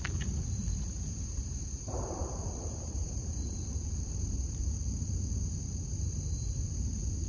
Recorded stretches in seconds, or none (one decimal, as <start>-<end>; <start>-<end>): 2.2-2.7; 4.6-5.9